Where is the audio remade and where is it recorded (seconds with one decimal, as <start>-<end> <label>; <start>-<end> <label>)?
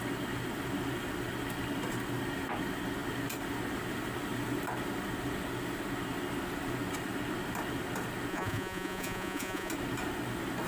0.0-8.3 recorded; 8.3-9.7 remade; 9.7-10.7 recorded